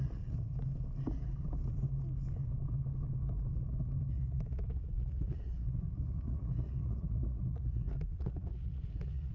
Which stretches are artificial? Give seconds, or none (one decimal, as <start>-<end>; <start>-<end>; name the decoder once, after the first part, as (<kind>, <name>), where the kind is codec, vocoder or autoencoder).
0.0-0.5 (vocoder, Vocos); 4.1-9.3